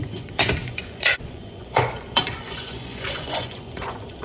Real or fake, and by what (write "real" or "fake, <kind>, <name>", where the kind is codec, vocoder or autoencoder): fake, vocoder, Vocos